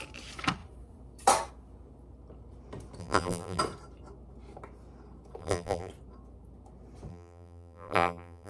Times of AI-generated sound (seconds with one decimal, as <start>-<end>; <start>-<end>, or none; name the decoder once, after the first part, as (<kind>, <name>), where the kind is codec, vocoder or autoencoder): 3.0-3.6 (vocoder, BigVGAN v2); 5.4-5.9; 7.1-8.5

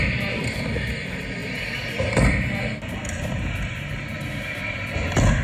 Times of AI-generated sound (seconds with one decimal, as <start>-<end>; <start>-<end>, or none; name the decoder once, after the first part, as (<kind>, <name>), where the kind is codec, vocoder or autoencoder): none

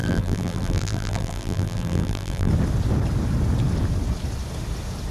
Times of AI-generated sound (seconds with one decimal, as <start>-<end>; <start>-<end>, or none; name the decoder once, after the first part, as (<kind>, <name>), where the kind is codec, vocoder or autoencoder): 0.0-2.5 (vocoder, BigVGAN v2)

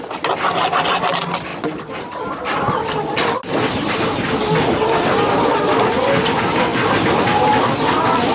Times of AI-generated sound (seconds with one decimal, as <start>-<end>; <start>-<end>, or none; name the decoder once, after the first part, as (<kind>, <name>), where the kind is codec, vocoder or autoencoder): none

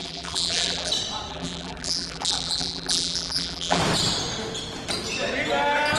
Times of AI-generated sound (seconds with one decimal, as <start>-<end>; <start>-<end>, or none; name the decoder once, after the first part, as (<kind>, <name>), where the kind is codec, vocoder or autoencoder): 0.0-0.9 (vocoder, BigVGAN v2); 1.3-3.8

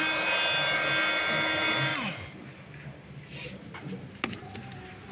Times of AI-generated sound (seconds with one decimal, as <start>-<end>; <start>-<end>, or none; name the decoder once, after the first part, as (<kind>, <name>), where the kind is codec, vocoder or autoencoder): none

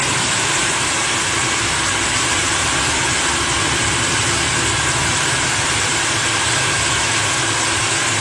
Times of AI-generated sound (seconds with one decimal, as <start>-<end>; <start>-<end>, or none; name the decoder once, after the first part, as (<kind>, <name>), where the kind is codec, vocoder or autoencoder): 0.0-8.2 (vocoder, BigVGAN v2)

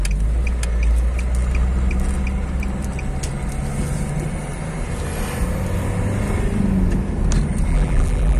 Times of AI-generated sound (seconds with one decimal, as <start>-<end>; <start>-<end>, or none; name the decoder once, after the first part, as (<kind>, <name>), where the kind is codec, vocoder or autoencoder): 7.7-8.4 (vocoder, BigVGAN v2)